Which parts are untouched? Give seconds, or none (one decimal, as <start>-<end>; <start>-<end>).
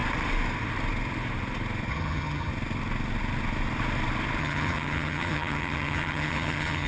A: 0.0-1.9; 2.5-4.4